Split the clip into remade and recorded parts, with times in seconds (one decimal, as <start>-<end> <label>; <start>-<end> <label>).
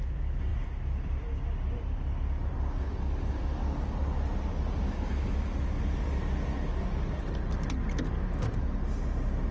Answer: 0.0-9.5 recorded